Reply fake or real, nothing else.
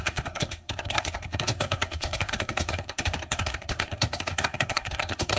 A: fake